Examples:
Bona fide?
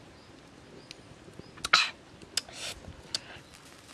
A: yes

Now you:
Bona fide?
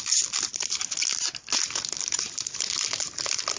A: yes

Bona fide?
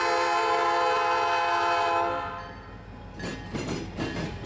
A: yes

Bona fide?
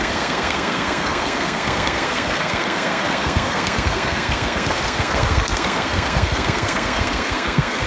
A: no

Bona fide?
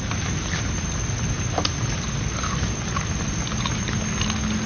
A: yes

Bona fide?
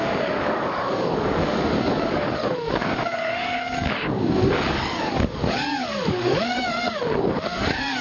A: no